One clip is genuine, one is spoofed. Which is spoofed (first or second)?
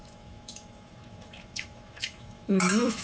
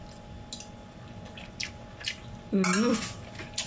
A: first